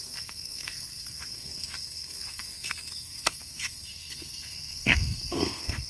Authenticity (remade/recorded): remade